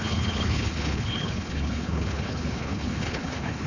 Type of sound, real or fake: fake